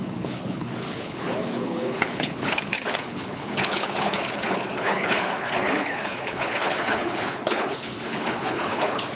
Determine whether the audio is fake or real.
fake